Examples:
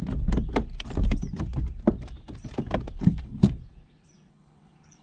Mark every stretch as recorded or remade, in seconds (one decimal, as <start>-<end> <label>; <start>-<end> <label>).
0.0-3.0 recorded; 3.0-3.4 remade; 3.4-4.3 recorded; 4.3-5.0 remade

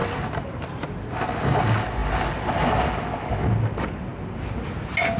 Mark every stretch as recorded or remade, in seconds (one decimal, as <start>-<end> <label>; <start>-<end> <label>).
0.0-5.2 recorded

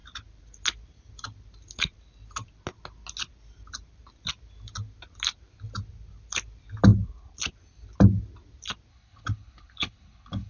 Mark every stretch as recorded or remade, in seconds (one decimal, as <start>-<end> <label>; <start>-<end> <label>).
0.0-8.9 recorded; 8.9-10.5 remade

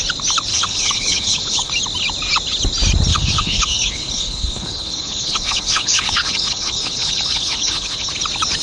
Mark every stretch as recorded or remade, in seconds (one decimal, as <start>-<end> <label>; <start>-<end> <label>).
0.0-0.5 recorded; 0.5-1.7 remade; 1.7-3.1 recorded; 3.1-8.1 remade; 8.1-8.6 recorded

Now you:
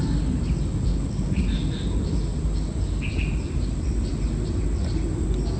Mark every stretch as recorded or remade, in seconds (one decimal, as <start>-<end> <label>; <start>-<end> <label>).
0.0-0.9 recorded; 0.9-1.4 remade; 1.4-5.6 recorded

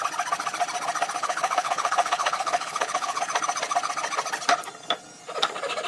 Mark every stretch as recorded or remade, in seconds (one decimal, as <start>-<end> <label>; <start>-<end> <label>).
0.0-1.2 recorded; 1.2-3.2 remade; 3.2-5.9 recorded

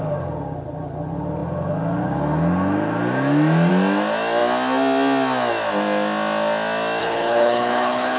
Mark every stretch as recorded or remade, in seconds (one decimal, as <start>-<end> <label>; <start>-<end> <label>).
0.0-7.0 recorded; 7.0-8.2 remade